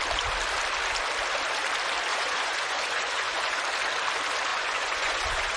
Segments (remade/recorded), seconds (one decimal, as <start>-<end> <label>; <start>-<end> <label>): 0.0-2.1 recorded; 2.1-3.6 remade; 3.6-4.5 recorded; 4.5-5.6 remade